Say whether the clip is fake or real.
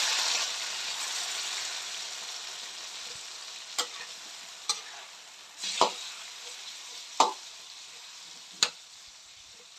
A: real